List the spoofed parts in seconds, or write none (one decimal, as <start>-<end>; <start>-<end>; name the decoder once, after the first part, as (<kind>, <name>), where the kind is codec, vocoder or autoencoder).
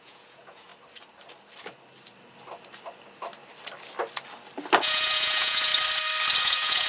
0.0-0.7 (vocoder, Vocos); 4.8-5.7; 6.4-6.9